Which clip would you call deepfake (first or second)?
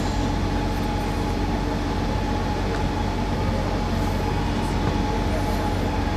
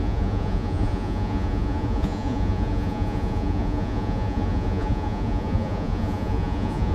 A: second